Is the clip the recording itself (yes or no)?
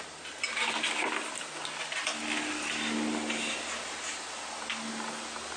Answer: yes